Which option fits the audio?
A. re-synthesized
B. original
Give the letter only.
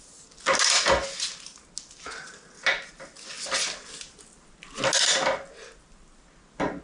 B